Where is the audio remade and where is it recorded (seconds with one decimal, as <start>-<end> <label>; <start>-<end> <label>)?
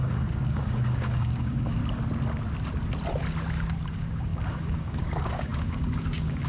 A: 0.0-1.8 remade; 1.8-3.9 recorded; 3.9-6.5 remade